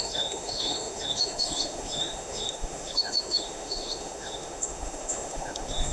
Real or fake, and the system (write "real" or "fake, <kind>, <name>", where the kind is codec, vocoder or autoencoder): fake, autoencoder, DAC-VAE